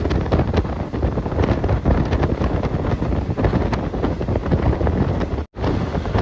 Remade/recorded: recorded